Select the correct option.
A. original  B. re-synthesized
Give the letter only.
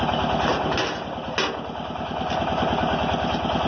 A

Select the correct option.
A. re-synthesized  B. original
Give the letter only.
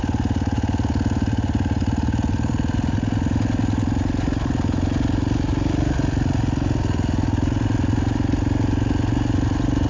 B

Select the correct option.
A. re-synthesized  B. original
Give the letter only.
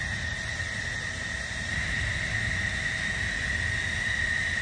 B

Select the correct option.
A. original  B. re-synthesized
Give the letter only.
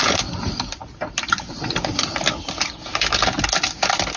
A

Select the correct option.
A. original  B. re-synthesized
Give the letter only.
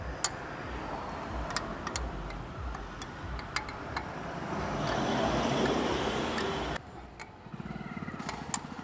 A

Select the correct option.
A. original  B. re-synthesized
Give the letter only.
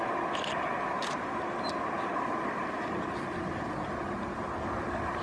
A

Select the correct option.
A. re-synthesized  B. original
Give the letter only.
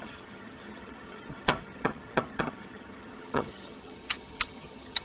A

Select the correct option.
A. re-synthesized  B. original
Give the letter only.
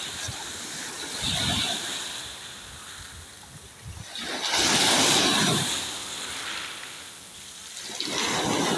B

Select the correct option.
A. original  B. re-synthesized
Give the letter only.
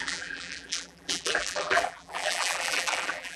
B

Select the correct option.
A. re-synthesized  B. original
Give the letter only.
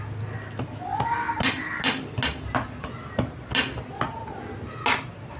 B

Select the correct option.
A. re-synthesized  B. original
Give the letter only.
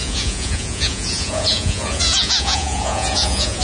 A